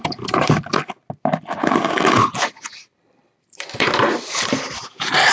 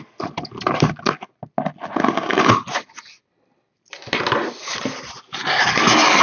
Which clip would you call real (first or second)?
second